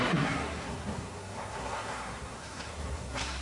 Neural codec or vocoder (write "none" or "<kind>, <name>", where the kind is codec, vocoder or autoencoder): codec, SNAC